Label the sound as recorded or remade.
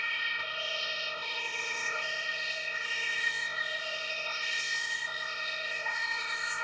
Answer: remade